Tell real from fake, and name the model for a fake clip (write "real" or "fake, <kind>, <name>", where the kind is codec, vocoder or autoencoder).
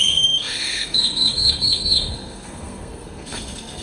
fake, codec, SNAC